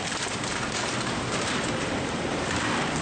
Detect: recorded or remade remade